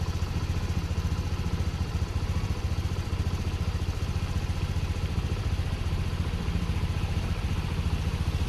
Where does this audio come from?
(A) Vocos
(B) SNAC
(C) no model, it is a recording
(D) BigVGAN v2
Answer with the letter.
C